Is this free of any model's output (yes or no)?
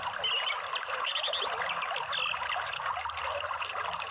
yes